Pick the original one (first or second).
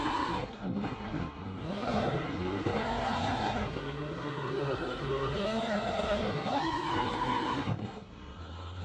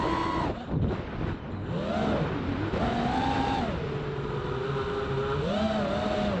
second